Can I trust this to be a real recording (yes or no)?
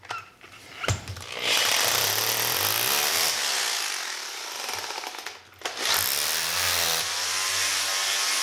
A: yes